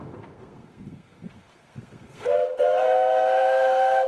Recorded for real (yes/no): no